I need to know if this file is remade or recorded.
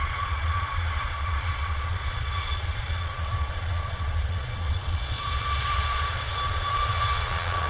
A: remade